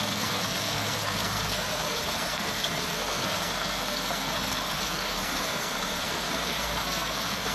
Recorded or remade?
remade